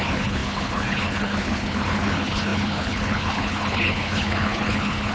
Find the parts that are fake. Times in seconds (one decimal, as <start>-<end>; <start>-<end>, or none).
0.0-5.1